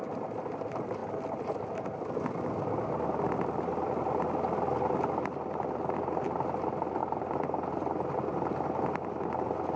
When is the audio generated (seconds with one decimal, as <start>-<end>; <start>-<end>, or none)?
none